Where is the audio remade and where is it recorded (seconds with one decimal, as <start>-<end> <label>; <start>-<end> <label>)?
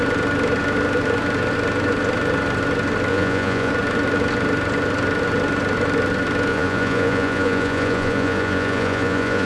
0.0-3.1 recorded; 3.1-3.7 remade; 3.7-6.5 recorded; 6.5-9.5 remade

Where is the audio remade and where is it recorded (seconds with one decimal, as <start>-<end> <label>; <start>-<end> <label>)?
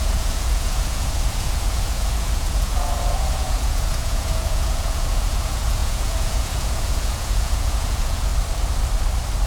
0.0-8.3 remade; 8.3-9.5 recorded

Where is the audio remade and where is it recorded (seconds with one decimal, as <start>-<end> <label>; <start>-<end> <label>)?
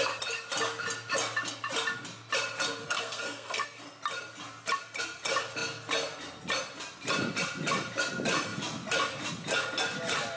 0.0-2.8 recorded; 2.8-3.8 remade; 3.8-10.4 recorded